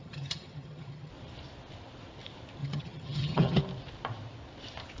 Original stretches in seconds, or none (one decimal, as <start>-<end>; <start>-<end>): 1.1-2.6; 3.6-5.0